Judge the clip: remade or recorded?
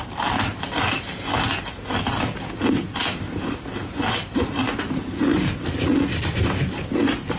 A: recorded